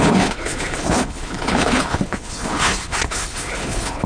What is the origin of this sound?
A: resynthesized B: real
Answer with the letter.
A